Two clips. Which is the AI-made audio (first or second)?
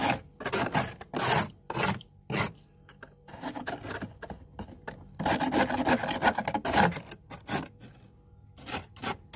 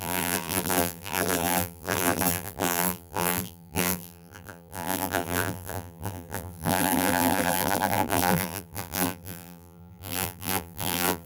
second